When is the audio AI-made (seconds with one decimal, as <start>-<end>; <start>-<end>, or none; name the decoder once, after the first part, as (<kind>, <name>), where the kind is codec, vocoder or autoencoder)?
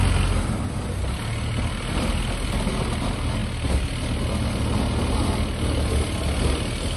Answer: none